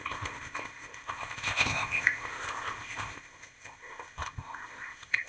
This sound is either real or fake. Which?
fake